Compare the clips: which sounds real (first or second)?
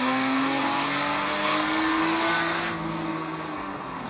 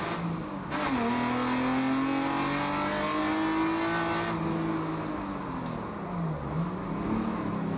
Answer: second